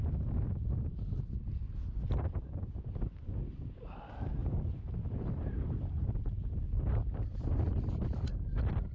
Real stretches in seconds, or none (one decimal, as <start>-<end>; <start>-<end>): 0.0-4.4; 5.0-8.9